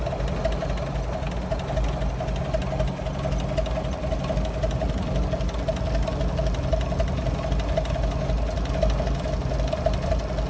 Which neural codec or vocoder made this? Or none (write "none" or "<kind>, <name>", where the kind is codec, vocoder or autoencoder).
none